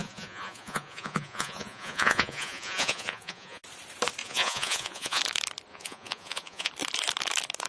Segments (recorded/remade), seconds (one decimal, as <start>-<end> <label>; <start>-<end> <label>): 0.0-3.6 remade; 3.6-4.2 recorded; 4.2-5.2 remade; 5.2-5.7 recorded; 5.7-6.7 remade; 6.7-7.7 recorded